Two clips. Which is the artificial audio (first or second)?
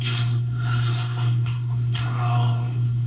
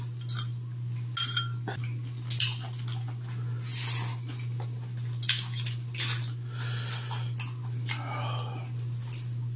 first